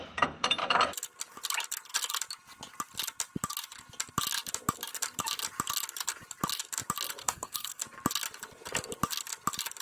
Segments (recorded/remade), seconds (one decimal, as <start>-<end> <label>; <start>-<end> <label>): 0.0-7.2 recorded; 7.2-7.8 remade; 7.8-9.8 recorded